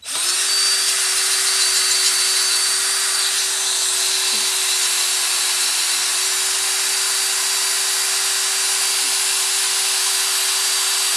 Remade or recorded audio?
recorded